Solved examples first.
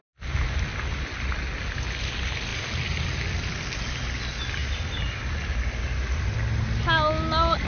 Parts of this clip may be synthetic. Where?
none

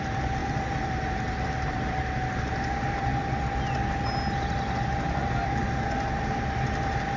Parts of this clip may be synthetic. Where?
none

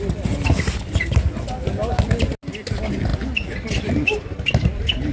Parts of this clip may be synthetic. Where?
none

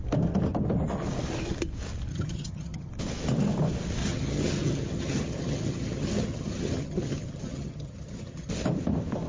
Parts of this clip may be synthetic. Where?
2.1-2.9 (vocoder, HiFi-GAN); 4.0-8.5

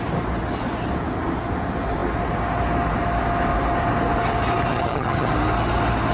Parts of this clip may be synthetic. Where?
4.7-5.3 (vocoder, HiFi-GAN)

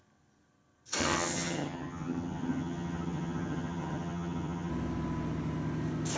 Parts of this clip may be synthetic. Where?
1.0-4.7 (vocoder, HiFi-GAN)

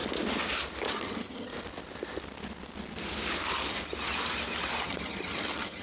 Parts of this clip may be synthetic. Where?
0.9-1.5 (vocoder, HiFi-GAN); 4.8-5.8